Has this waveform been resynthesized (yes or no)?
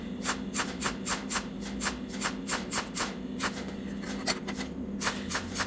no